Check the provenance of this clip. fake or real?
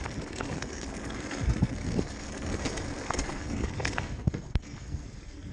fake